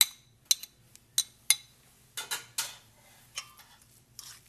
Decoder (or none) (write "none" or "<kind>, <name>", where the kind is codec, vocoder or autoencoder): none